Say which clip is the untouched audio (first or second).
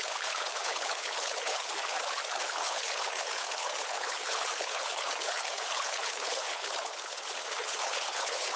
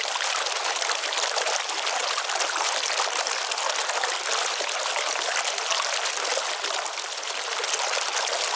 second